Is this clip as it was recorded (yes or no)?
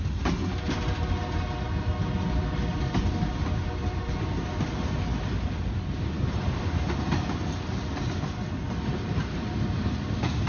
yes